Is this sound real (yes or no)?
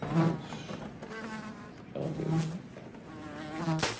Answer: yes